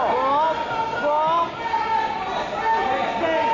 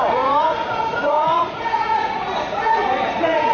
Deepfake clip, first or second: second